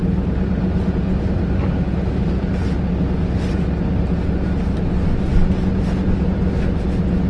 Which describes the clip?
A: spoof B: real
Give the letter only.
B